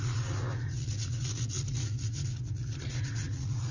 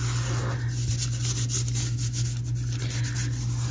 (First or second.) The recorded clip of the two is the second